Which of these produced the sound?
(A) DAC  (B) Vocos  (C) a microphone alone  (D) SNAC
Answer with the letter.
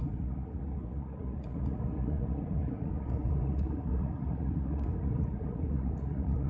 B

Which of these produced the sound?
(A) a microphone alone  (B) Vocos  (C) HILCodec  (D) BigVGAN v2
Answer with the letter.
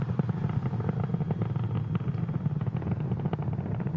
A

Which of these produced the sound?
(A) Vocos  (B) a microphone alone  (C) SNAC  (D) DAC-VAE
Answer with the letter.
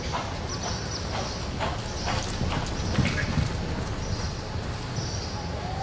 B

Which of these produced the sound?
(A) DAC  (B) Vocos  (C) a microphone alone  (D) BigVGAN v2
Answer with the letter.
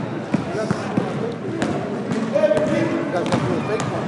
C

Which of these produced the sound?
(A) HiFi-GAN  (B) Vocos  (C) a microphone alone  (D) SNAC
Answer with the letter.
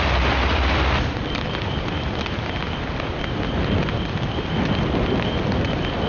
C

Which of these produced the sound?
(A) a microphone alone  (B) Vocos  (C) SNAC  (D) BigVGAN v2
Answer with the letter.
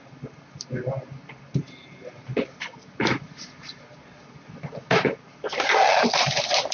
A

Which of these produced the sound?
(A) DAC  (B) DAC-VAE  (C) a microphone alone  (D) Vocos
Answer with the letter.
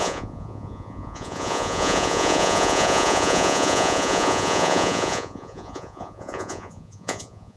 D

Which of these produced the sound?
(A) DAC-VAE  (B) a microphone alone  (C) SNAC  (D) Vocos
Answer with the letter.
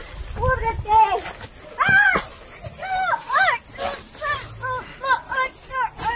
B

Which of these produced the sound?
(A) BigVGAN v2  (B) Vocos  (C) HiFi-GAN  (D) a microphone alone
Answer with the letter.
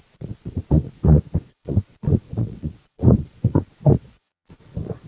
B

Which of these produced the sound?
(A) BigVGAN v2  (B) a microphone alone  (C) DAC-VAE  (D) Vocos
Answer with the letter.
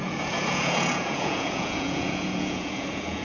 D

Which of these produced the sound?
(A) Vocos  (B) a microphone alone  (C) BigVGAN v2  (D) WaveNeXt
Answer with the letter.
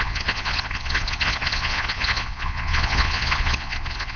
A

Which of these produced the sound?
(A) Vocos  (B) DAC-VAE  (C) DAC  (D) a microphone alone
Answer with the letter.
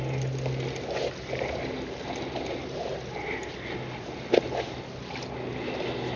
D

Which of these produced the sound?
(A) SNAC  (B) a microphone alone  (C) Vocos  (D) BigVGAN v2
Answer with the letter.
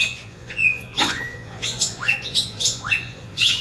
C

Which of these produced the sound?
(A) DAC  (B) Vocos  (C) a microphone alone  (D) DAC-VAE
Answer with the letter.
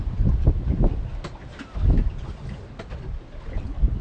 C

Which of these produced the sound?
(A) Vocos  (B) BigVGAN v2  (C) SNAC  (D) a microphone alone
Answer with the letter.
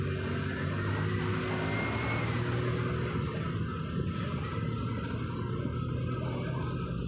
D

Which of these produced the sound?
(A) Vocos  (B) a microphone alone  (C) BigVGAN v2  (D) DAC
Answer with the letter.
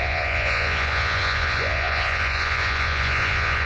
A